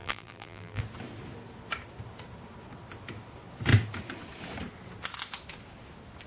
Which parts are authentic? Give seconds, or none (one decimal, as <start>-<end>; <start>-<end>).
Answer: 0.8-6.3